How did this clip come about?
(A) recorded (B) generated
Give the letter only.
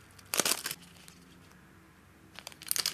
A